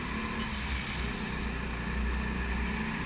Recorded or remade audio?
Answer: recorded